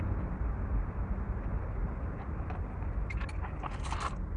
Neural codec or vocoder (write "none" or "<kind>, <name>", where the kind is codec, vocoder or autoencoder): none